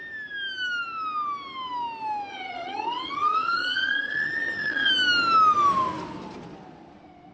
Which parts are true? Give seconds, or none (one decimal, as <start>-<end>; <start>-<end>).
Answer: 0.0-2.3; 4.9-7.3